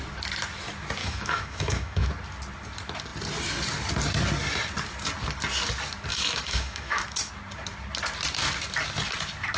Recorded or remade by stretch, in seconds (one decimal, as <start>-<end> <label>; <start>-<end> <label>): 0.0-1.0 recorded; 1.0-2.1 remade; 2.1-6.1 recorded; 6.1-7.3 remade; 7.3-9.6 recorded